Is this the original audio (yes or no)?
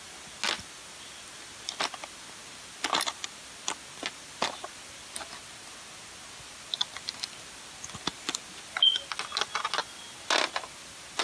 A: yes